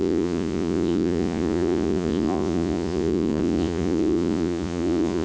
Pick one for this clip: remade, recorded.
remade